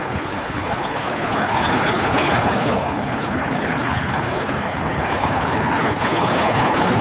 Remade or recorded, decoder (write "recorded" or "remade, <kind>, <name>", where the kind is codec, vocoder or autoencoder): remade, codec, HILCodec